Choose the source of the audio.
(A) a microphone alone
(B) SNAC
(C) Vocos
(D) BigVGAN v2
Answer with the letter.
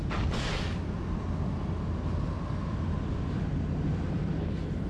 A